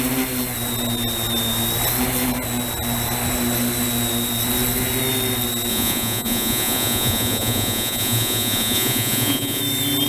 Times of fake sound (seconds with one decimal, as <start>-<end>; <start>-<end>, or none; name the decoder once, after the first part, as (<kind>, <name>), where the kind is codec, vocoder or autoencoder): 5.7-9.6 (vocoder, Vocos)